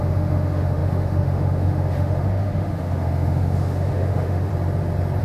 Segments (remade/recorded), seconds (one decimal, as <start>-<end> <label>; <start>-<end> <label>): 0.0-4.5 remade; 4.5-5.2 recorded